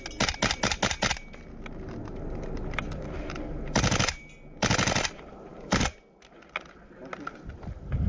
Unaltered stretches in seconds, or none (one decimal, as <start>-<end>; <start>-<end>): 0.0-8.1